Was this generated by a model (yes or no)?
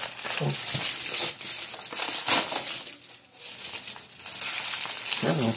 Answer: no